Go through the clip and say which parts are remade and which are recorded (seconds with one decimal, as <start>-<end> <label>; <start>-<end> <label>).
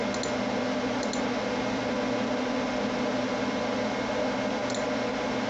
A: 0.0-5.5 recorded